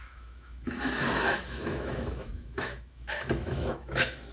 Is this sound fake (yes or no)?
yes